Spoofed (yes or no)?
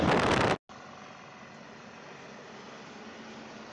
no